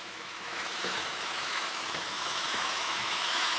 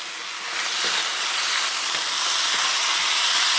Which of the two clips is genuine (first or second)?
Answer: second